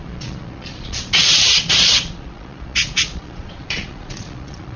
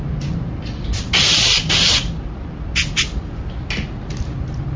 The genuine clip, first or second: second